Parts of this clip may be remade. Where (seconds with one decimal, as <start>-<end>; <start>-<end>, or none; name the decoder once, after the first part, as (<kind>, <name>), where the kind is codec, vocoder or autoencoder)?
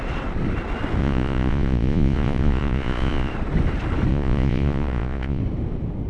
1.0-3.3 (vocoder, Vocos); 4.1-5.4